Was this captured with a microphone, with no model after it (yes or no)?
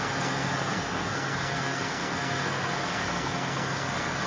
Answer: no